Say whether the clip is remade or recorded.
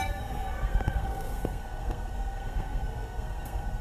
remade